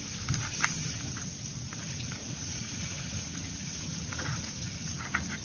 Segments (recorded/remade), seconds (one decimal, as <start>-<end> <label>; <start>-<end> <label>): 0.0-2.2 recorded; 2.2-5.0 remade; 5.0-5.4 recorded